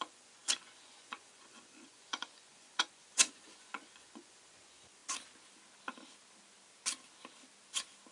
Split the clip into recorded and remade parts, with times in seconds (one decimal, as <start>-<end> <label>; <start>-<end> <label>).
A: 0.0-5.0 remade; 5.0-8.1 recorded